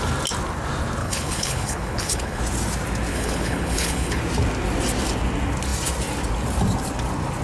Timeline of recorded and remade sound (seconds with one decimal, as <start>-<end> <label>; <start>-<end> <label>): 0.0-1.0 recorded; 1.0-2.4 remade; 2.4-3.1 recorded; 3.1-4.2 remade; 4.2-7.4 recorded